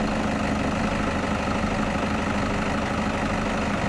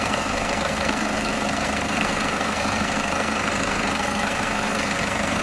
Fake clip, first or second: second